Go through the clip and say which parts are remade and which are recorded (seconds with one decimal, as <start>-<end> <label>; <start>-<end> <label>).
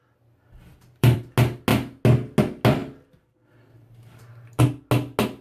0.0-0.7 recorded; 0.7-1.2 remade; 1.2-2.8 recorded; 2.8-4.6 remade; 4.6-5.4 recorded